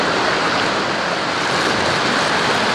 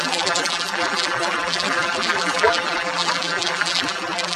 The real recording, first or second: first